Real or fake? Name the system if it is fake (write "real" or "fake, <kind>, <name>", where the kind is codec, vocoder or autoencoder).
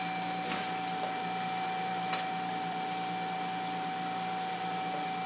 fake, vocoder, BigVGAN v2